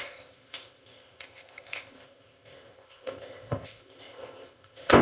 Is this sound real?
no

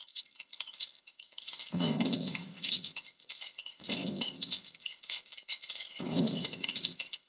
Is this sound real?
no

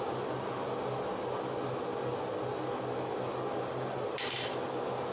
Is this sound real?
yes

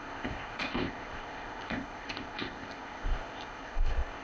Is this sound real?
no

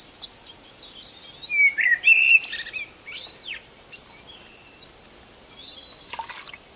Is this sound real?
yes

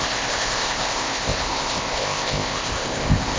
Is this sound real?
no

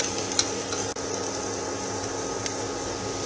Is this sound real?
yes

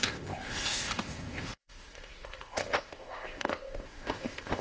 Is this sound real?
no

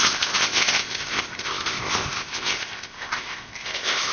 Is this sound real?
no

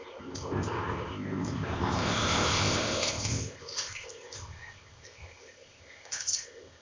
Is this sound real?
no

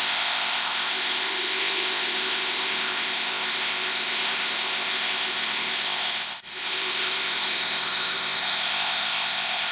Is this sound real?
no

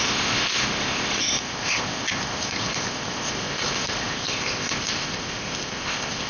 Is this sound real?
no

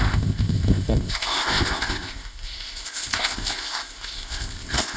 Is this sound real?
no